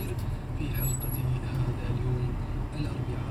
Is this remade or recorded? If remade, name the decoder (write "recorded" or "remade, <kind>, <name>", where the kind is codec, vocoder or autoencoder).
recorded